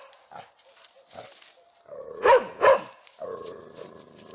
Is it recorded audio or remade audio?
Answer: recorded